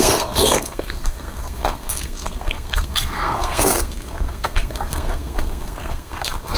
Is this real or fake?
fake